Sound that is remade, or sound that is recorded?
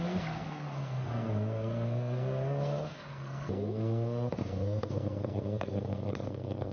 remade